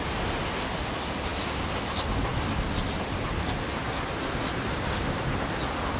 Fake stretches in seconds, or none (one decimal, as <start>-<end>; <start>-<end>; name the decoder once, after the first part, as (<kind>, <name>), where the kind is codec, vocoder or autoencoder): none